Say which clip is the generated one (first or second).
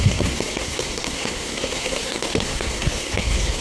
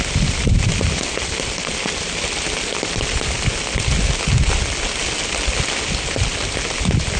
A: first